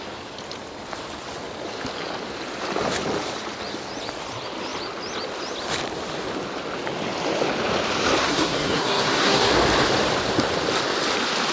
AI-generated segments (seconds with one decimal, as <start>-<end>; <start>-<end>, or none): 8.2-9.5